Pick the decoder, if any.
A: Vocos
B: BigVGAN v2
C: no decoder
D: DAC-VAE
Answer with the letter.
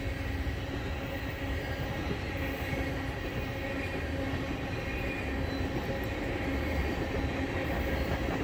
C